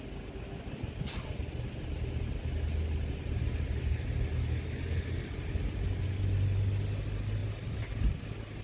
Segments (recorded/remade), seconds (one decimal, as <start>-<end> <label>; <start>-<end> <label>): 0.0-8.6 recorded